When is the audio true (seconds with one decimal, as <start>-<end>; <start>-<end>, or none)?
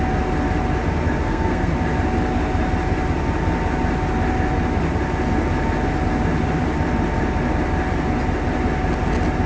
0.0-1.2; 1.7-9.5